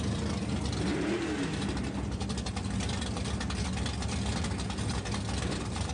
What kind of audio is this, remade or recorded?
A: recorded